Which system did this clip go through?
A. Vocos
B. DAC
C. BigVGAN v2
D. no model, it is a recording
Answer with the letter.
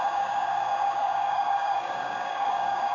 B